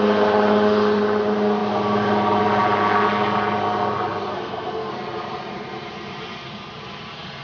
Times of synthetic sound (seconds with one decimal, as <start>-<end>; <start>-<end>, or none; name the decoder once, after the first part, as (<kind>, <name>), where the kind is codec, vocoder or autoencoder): 4.3-4.9 (codec, SNAC)